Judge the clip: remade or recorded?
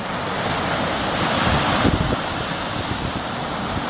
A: recorded